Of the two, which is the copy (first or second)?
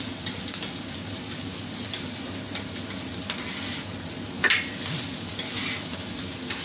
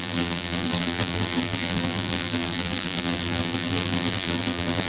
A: second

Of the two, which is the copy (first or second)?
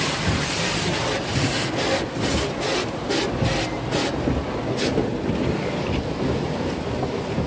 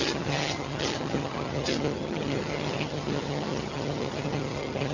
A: second